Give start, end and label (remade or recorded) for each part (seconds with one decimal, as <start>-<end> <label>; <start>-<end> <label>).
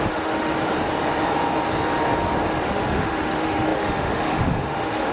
0.0-0.5 remade; 0.5-2.7 recorded; 2.7-5.1 remade